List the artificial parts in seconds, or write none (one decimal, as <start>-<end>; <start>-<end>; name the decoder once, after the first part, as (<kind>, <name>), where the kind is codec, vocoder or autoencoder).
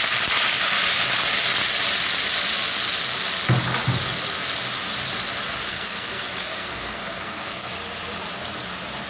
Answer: 5.7-7.7 (codec, SNAC)